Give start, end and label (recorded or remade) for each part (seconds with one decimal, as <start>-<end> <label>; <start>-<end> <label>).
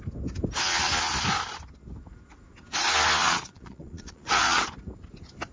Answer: 0.0-3.2 recorded; 3.2-4.6 remade; 4.6-5.5 recorded